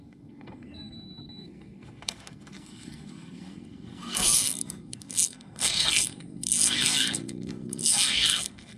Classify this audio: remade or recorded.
remade